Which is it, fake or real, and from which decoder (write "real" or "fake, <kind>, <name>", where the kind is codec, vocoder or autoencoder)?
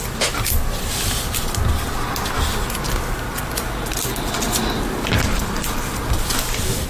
real